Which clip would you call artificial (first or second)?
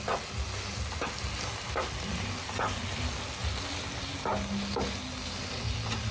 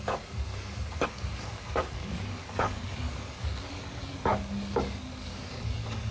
second